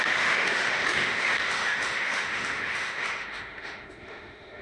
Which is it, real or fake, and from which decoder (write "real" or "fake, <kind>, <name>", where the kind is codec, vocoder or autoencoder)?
fake, autoencoder, DAC-VAE